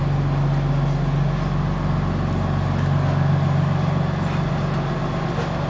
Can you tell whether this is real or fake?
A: real